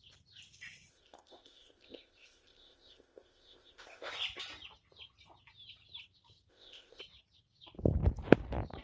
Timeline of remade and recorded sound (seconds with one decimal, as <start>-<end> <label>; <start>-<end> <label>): 0.0-0.9 recorded; 0.9-4.1 remade; 4.1-6.5 recorded; 6.5-7.0 remade; 7.0-8.8 recorded